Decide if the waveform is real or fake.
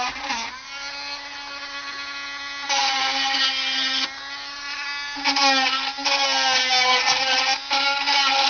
real